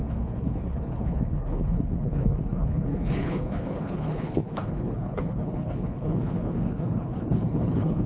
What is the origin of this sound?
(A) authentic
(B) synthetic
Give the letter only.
B